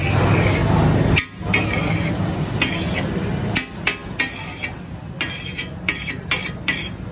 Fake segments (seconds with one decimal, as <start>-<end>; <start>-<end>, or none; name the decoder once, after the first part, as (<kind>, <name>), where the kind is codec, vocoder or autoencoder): none